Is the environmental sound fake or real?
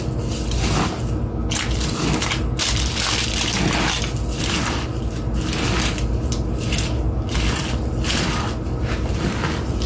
real